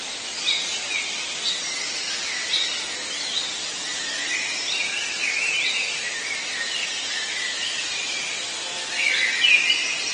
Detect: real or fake real